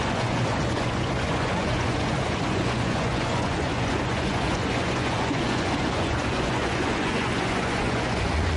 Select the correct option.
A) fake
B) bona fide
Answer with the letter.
A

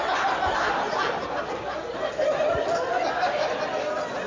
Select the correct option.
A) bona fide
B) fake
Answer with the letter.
A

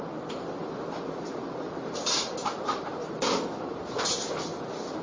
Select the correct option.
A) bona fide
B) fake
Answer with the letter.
A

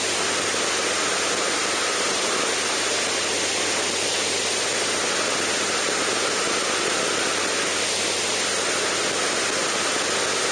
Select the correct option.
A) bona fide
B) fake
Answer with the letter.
A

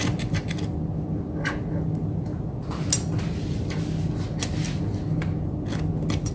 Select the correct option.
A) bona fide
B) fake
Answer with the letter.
A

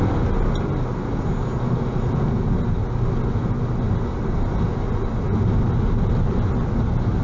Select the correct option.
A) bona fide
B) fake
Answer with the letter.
A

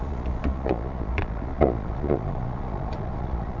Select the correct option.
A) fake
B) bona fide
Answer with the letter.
A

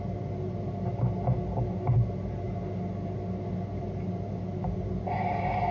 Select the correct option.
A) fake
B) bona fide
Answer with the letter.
B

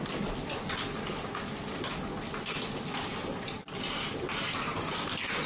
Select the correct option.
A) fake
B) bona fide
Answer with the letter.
B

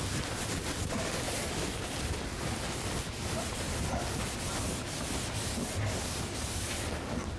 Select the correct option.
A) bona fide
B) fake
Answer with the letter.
A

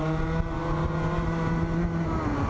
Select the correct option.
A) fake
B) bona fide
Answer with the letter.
B